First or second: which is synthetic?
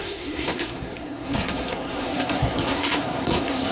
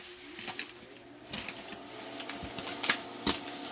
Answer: first